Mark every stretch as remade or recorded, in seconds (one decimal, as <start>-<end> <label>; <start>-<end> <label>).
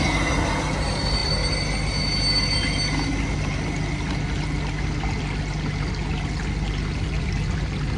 0.0-8.0 recorded